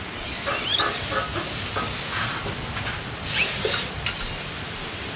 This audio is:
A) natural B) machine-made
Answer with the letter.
A